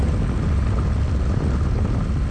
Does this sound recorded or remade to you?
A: recorded